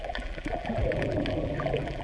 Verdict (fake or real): fake